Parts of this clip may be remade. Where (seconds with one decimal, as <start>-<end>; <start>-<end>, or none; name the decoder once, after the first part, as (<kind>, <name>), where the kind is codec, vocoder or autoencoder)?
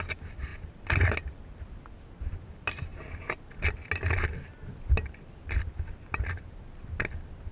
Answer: none